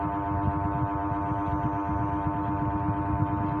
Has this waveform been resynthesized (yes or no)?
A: no